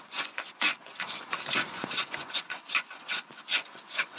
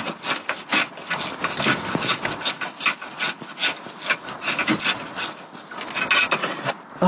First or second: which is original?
second